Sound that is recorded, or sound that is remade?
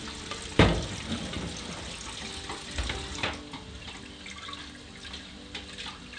recorded